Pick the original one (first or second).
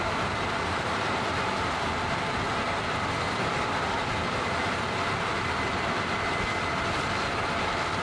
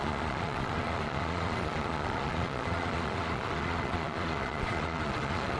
first